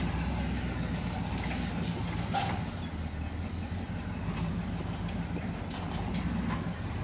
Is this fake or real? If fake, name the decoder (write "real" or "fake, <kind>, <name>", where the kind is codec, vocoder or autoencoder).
real